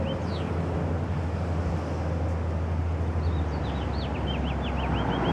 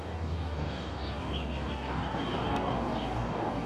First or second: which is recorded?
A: first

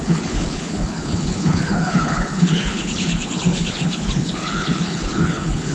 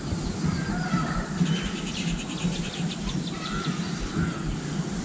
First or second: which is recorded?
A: second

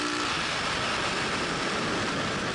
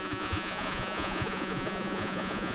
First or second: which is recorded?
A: first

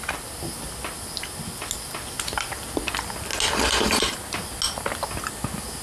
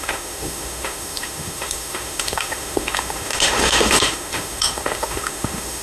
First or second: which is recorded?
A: first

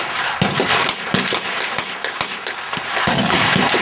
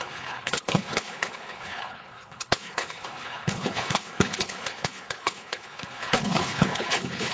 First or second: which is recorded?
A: first